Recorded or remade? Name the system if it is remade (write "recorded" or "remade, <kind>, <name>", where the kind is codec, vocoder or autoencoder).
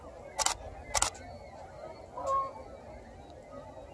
recorded